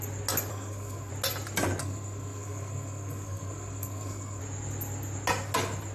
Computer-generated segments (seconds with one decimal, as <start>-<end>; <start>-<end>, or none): 0.5-1.1; 1.8-4.4